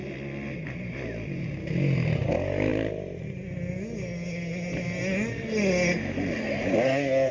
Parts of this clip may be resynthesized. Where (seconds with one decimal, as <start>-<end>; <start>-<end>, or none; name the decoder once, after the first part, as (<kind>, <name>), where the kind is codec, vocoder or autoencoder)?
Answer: none